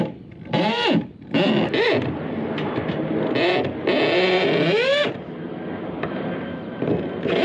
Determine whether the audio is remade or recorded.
recorded